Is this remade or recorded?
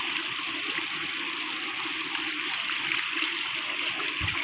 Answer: recorded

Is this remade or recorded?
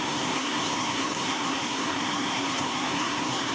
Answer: remade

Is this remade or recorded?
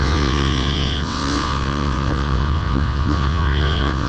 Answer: remade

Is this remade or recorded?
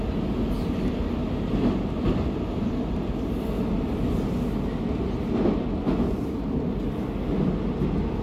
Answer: recorded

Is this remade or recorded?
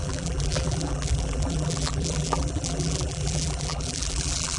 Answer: remade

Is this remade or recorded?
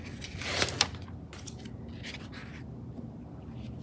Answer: recorded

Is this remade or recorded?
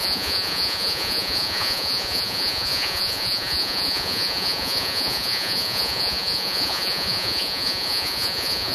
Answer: remade